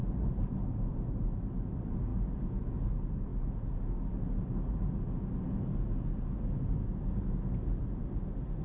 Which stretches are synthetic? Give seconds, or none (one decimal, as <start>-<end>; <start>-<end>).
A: none